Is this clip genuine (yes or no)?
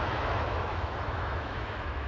no